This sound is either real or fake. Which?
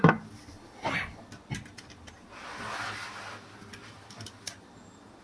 real